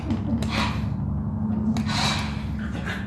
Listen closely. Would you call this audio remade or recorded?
recorded